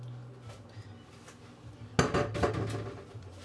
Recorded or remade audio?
recorded